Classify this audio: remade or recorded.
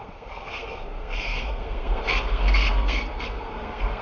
remade